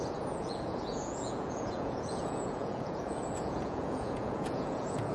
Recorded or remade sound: remade